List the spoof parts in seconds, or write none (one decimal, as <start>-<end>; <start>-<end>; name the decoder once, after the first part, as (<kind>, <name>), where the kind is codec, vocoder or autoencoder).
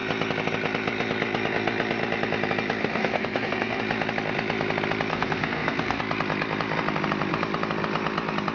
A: 2.8-3.8 (codec, SNAC); 5.1-6.0